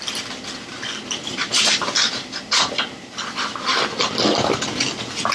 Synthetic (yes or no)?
no